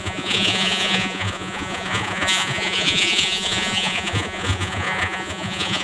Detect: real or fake fake